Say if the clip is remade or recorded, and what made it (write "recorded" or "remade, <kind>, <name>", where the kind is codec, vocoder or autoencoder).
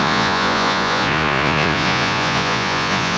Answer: remade, vocoder, Vocos